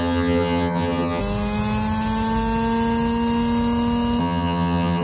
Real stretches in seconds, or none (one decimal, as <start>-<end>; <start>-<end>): 1.2-4.2